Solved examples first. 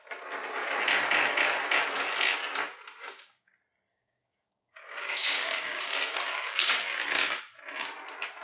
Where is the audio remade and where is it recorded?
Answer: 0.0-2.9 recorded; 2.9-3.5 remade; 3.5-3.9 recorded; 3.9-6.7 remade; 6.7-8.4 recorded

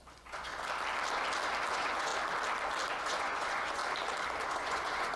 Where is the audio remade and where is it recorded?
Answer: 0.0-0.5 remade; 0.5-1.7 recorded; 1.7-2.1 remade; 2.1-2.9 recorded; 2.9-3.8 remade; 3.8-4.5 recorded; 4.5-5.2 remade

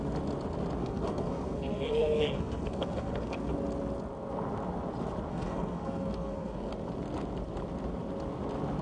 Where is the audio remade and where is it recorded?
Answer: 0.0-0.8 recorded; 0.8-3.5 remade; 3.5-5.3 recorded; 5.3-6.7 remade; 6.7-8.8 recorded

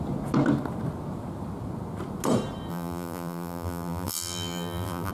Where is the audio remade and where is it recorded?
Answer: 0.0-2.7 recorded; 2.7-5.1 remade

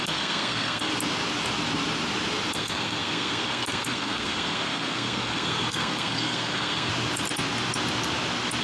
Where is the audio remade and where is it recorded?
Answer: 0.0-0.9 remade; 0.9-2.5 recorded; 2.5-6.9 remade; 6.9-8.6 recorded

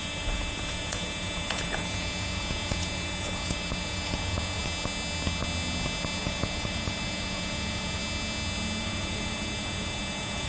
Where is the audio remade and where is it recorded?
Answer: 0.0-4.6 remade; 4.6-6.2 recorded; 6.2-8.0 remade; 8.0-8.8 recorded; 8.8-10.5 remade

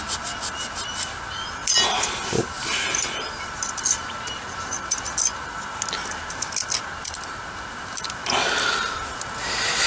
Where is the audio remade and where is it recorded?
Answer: 0.0-9.9 recorded

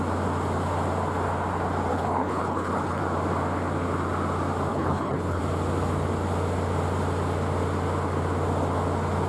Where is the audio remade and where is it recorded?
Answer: 0.0-1.9 recorded; 1.9-3.0 remade; 3.0-4.7 recorded; 4.7-5.4 remade; 5.4-9.3 recorded